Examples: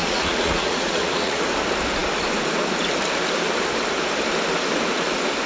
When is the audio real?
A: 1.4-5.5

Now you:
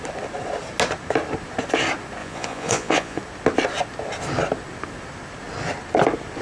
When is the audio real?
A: 0.0-2.2; 3.2-6.4

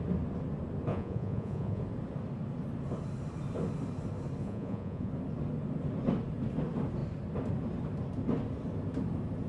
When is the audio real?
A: 0.0-0.9; 1.8-4.4; 5.1-9.5

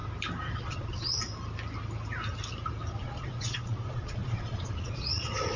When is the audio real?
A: 0.0-0.5; 1.2-3.0

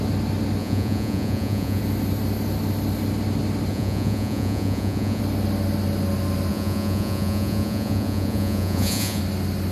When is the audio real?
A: 0.0-0.6; 1.8-3.7; 5.2-6.5; 9.2-9.7

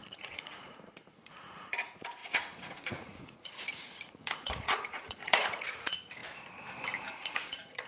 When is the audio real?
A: 6.2-7.1

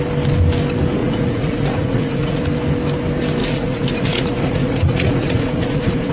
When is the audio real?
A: 0.0-1.0; 2.4-3.4

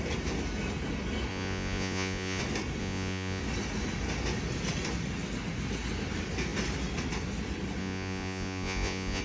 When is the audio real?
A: 0.0-1.3; 2.4-2.8; 3.4-7.8